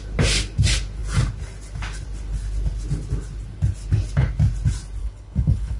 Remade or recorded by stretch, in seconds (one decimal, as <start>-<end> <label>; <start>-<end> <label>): 0.0-5.0 recorded; 5.0-5.8 remade